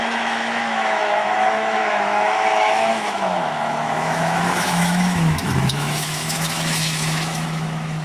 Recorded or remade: remade